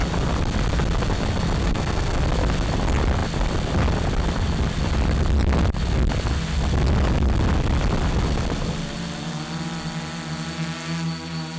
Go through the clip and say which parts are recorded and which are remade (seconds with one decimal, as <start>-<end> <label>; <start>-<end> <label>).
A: 0.0-1.6 recorded; 1.6-2.2 remade; 2.2-11.6 recorded